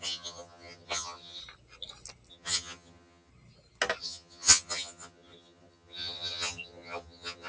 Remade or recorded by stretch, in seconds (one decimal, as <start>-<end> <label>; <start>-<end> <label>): 0.0-1.4 remade; 1.4-2.3 recorded; 2.3-3.3 remade; 3.3-4.0 recorded; 4.0-7.5 remade